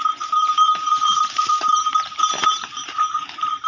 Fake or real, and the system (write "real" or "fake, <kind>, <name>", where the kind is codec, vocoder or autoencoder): fake, vocoder, BigVGAN v2